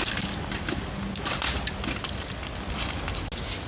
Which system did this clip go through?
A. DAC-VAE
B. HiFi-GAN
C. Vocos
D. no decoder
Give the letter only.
D